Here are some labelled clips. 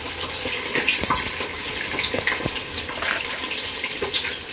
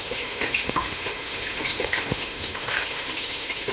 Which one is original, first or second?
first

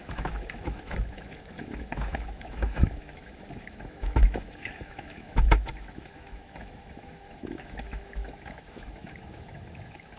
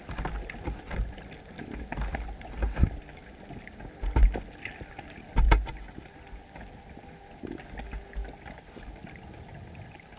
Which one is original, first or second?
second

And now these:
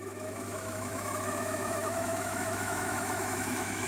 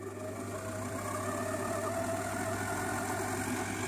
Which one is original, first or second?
second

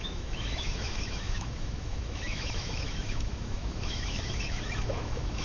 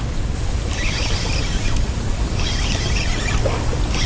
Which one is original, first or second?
second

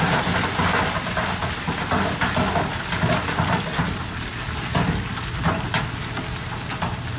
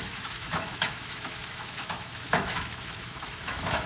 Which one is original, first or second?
first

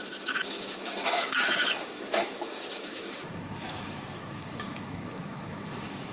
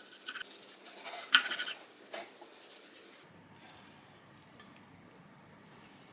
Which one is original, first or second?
second